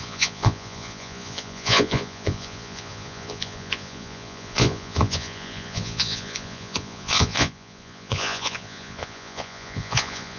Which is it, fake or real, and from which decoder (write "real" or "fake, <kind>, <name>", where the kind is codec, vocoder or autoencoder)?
fake, vocoder, Vocos